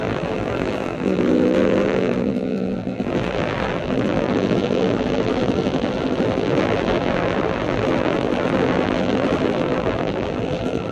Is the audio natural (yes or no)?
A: no